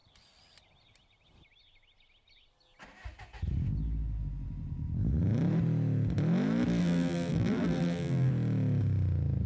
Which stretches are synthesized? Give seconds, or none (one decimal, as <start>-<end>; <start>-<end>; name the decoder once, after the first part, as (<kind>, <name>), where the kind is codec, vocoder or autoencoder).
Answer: 6.8-8.3 (vocoder, BigVGAN v2)